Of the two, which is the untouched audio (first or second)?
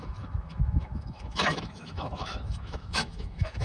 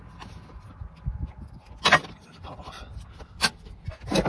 second